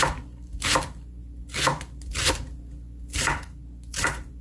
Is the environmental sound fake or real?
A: real